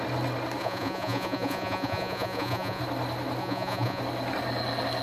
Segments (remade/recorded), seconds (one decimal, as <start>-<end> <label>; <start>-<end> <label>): 0.0-0.6 recorded; 0.6-2.8 remade; 2.8-3.4 recorded; 3.4-4.0 remade; 4.0-5.0 recorded